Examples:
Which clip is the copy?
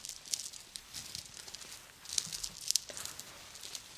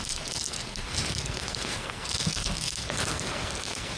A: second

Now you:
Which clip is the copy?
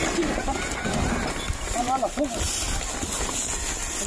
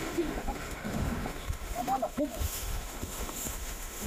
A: second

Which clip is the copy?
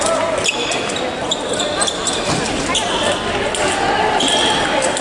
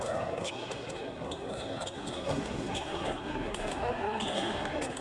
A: second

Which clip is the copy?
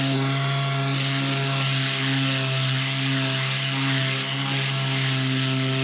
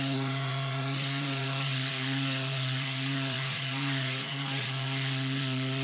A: second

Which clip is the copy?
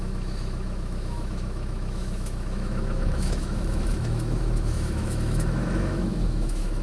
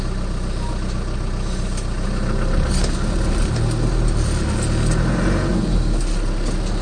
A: first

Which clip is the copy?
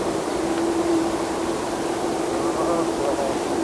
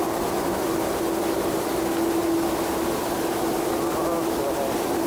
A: first